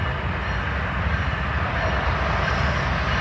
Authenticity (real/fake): real